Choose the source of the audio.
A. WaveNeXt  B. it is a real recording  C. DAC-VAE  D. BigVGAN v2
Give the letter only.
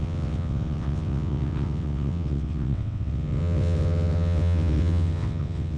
A